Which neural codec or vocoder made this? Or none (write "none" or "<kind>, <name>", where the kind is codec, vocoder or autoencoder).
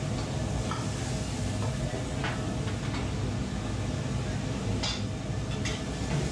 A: none